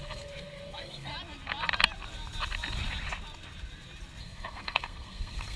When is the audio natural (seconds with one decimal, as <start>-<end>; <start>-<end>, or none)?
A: 1.1-4.2